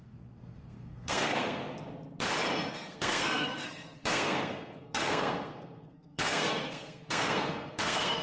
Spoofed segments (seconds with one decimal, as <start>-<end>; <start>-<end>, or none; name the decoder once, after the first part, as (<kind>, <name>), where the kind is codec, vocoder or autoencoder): 0.0-1.6 (codec, SNAC); 2.7-8.2